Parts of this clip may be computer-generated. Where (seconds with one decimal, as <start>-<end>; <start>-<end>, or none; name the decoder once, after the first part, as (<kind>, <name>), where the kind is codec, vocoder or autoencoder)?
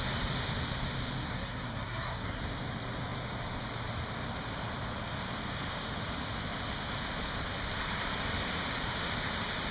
1.2-2.4 (codec, SNAC)